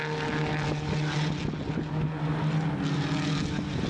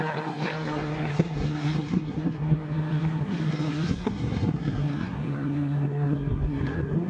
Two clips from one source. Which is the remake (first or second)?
second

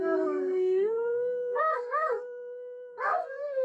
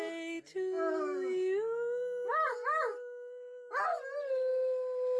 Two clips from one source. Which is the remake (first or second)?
first